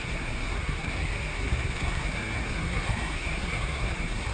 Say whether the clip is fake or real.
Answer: fake